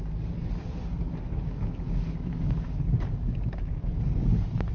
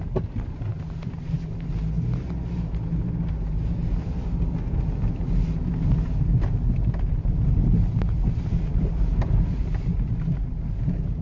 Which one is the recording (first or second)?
second